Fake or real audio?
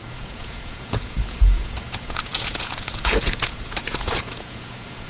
fake